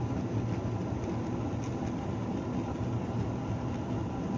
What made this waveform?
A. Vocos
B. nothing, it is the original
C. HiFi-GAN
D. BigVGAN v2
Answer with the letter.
B